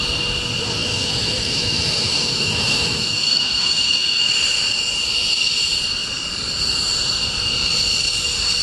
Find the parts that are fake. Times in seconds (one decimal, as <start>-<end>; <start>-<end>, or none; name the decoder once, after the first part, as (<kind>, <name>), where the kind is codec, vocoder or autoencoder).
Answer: 0.8-4.3 (autoencoder, DAC-VAE)